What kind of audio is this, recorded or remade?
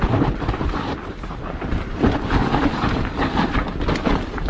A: recorded